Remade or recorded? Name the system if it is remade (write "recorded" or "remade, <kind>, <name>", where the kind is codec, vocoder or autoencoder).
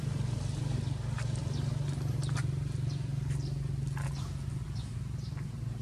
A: recorded